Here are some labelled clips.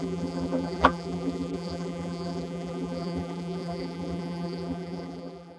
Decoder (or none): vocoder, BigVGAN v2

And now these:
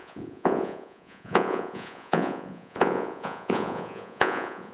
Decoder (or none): vocoder, Vocos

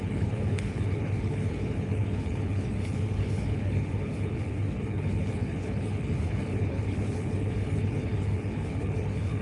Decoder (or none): codec, HILCodec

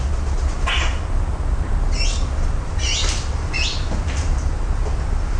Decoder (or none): none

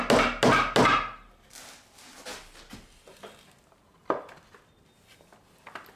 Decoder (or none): none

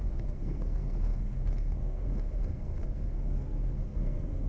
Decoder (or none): codec, SNAC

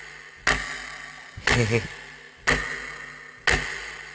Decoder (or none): none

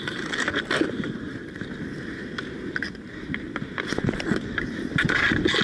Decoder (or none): none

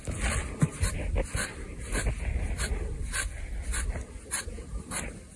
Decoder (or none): none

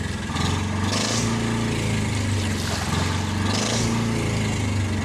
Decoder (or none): none